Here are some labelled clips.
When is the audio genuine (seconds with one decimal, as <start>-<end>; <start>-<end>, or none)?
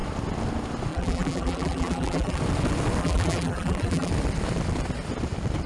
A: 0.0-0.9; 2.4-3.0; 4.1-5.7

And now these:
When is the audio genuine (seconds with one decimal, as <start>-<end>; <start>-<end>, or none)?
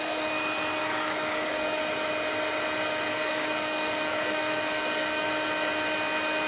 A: 0.0-0.8; 1.8-3.1; 5.3-6.5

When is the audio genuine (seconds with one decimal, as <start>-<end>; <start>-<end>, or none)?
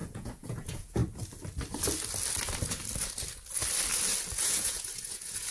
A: 1.0-4.3